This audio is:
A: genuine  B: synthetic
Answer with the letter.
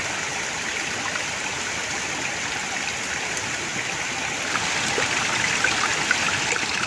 A